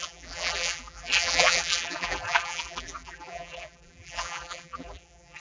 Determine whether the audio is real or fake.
fake